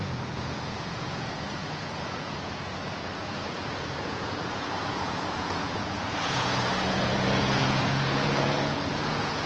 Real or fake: fake